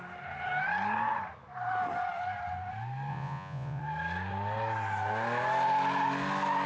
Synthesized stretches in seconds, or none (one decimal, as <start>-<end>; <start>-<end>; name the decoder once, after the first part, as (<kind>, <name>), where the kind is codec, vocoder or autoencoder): 3.1-3.8 (vocoder, Vocos)